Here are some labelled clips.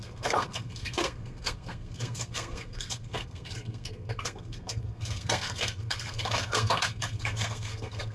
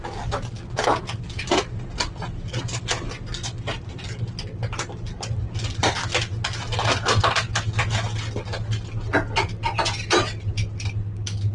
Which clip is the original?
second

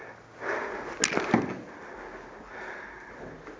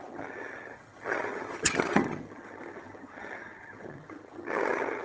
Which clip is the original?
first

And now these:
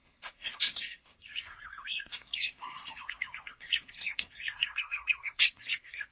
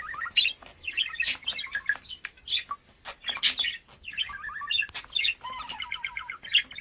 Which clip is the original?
second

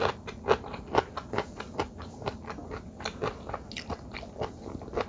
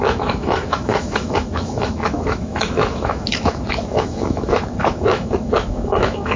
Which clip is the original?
first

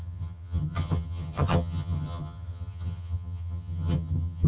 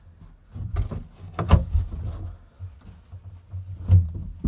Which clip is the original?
second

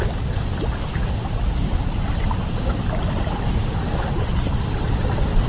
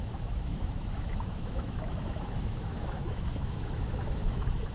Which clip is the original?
first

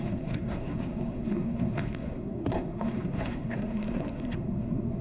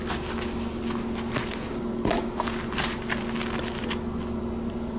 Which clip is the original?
second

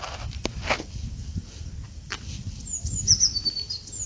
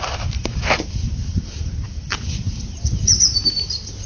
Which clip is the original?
first